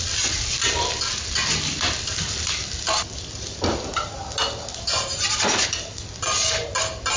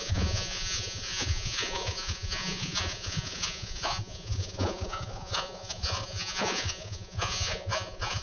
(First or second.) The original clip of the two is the first